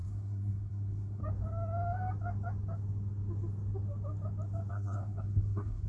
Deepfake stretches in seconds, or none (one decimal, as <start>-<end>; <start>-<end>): 0.0-1.2; 4.7-5.9